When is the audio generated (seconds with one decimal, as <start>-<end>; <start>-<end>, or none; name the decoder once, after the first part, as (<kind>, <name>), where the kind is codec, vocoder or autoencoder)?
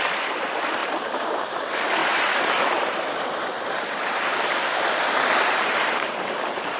0.0-6.8 (vocoder, BigVGAN v2)